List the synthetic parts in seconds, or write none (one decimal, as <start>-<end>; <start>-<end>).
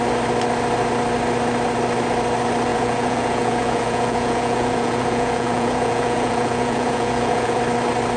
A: 2.7-7.6